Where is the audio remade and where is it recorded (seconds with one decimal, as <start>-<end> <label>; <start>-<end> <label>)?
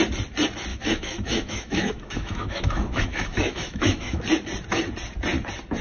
0.0-0.7 recorded; 0.7-4.2 remade; 4.2-5.8 recorded